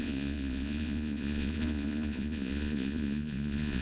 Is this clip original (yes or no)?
no